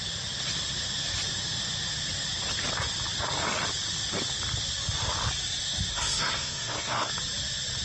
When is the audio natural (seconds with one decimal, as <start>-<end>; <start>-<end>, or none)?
0.0-5.9; 7.1-7.8